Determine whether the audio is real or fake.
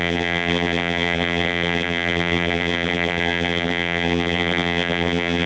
fake